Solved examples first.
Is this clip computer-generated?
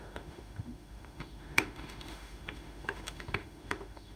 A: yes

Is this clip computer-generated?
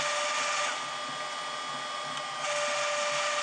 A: no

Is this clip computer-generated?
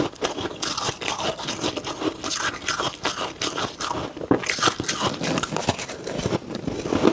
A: no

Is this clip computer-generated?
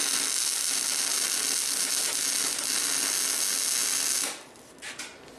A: no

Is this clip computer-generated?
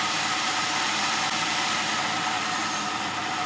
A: yes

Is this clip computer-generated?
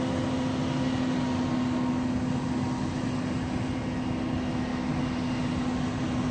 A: no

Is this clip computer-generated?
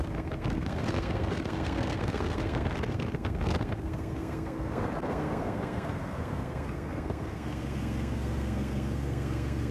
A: yes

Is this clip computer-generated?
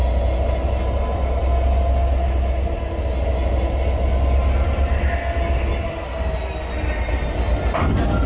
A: no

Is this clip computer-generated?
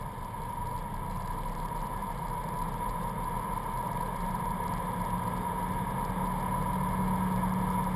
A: no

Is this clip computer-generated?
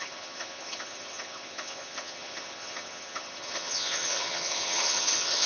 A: yes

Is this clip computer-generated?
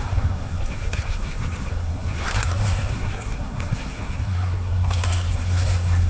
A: yes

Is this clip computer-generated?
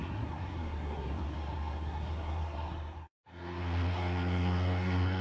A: yes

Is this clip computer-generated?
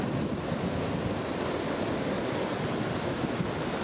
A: no